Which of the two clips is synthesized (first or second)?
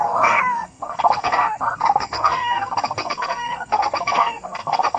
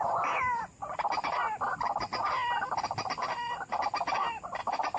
first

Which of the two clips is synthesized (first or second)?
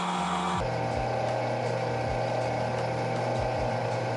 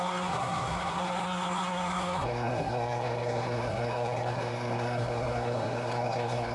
second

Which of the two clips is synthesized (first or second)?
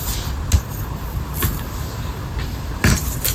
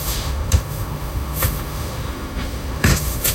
second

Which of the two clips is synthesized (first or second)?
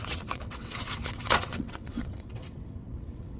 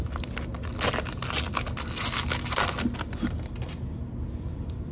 first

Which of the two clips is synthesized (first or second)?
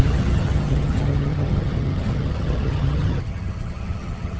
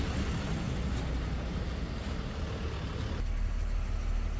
first